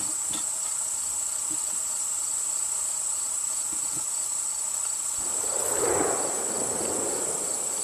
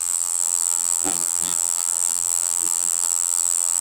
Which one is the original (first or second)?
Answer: first